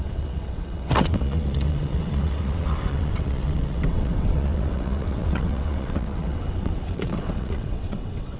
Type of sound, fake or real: fake